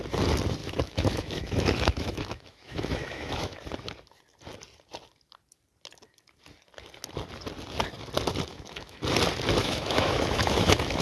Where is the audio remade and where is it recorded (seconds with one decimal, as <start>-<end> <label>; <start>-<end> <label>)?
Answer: 0.0-0.6 recorded; 0.6-3.6 remade; 3.6-8.5 recorded; 8.5-9.0 remade; 9.0-9.6 recorded; 9.6-11.0 remade